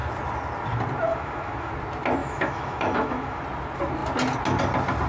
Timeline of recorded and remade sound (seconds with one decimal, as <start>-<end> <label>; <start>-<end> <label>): 0.0-1.1 recorded; 1.1-1.7 remade; 1.7-2.2 recorded; 2.2-3.4 remade; 3.4-5.1 recorded